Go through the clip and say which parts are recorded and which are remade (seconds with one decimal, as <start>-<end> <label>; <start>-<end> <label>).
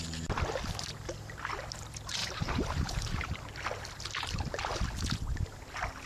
0.0-2.2 recorded; 2.2-3.3 remade; 3.3-6.1 recorded